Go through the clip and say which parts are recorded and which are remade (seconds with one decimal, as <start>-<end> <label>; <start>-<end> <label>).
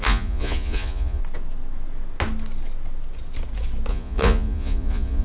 0.0-1.2 remade; 1.2-3.9 recorded; 3.9-5.2 remade